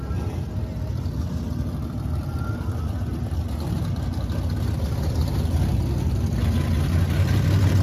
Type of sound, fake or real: real